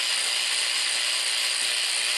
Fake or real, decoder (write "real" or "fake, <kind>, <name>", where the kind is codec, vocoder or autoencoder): real